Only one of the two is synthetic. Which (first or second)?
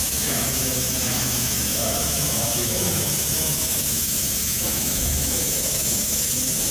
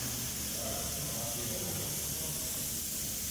first